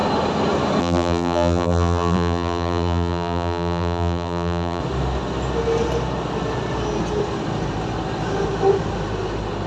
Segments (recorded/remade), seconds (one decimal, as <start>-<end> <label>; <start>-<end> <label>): 0.0-0.8 recorded; 0.8-4.8 remade; 4.8-9.7 recorded